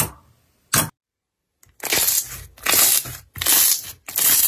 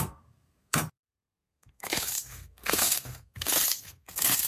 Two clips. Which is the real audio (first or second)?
first